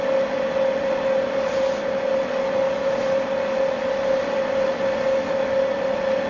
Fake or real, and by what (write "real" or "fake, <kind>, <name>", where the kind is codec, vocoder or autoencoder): real